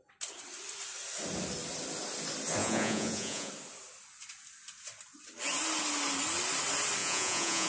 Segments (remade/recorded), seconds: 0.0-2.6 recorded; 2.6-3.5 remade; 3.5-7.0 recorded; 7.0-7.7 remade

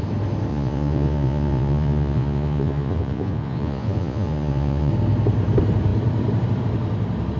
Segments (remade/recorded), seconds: 0.0-0.5 recorded; 0.5-4.9 remade; 4.9-7.4 recorded